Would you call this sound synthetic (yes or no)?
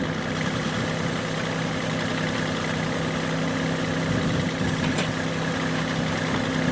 no